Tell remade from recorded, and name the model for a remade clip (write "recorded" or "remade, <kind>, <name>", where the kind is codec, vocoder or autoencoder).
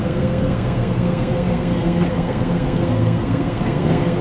remade, codec, SNAC